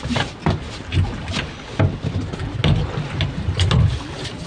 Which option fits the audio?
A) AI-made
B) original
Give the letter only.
B